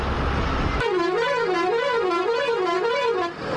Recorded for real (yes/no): yes